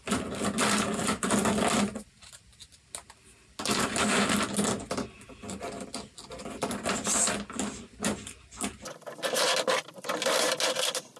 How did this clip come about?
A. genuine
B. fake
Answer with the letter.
A